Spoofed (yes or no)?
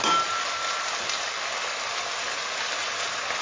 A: no